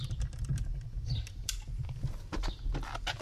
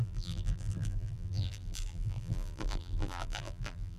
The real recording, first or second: first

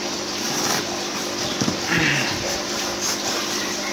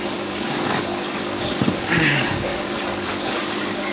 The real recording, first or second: first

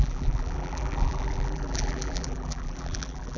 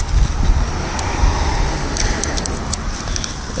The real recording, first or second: second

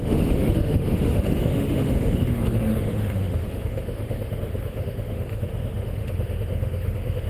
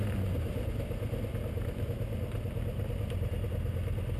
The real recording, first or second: second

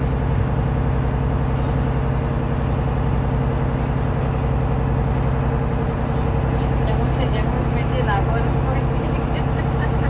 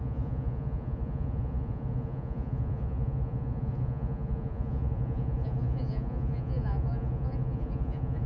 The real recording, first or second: first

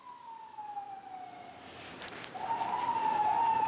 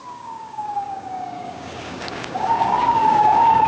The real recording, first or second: first